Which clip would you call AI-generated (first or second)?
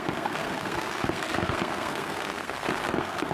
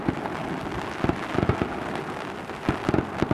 first